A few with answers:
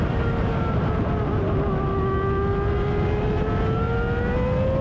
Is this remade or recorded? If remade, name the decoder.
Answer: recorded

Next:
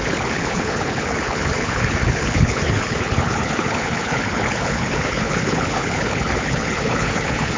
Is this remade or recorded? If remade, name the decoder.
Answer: remade, codec, HILCodec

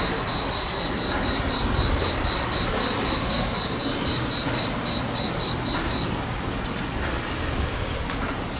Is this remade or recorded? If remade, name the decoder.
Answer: recorded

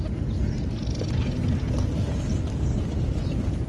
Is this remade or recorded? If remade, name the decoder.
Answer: recorded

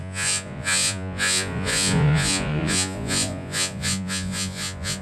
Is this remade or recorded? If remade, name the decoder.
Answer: remade, vocoder, Vocos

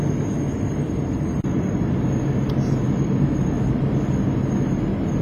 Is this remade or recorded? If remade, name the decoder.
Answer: recorded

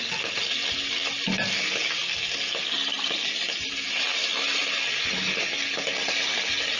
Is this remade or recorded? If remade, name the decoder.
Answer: recorded